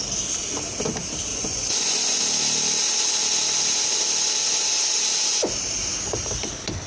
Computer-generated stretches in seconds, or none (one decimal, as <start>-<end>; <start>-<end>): 1.3-2.2